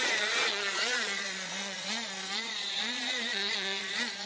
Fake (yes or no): yes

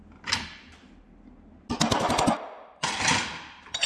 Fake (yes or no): no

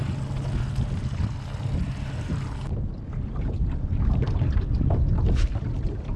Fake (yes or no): no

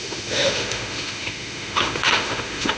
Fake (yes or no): yes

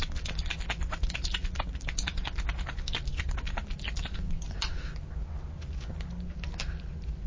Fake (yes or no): no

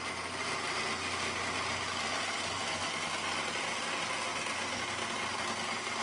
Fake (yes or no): no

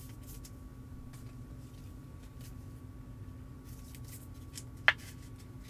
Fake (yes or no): no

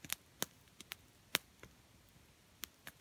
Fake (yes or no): no